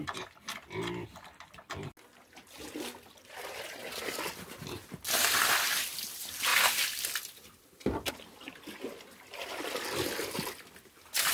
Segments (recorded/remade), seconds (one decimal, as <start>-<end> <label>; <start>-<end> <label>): 0.0-11.3 recorded

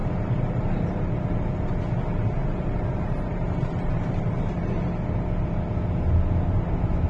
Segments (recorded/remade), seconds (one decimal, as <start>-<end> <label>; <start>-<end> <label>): 0.0-1.7 remade; 1.7-2.4 recorded; 2.4-4.9 remade; 4.9-7.1 recorded

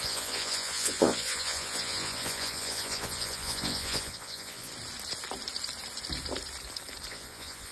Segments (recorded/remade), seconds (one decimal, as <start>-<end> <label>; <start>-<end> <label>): 0.0-4.7 remade; 4.7-7.1 recorded; 7.1-7.7 remade

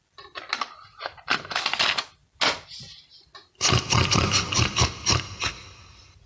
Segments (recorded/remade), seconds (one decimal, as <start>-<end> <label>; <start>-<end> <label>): 0.0-6.3 recorded